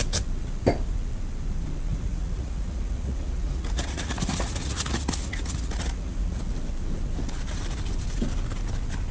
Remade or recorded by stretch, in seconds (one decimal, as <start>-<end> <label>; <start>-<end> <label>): 0.0-1.9 recorded; 1.9-6.4 remade; 6.4-9.1 recorded

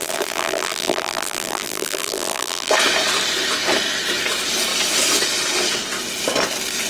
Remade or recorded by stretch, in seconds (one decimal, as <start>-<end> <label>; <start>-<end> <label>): 0.0-2.7 remade; 2.7-6.9 recorded

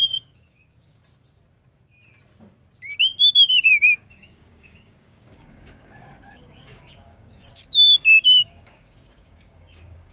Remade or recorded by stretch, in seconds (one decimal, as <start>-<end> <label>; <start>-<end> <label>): 0.0-1.0 remade; 1.0-3.5 recorded; 3.5-7.5 remade; 7.5-8.2 recorded; 8.2-10.1 remade

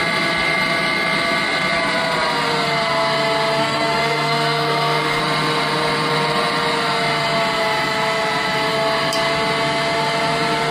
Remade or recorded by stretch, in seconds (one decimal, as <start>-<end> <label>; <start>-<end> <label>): 0.0-3.6 recorded; 3.6-5.2 remade; 5.2-10.7 recorded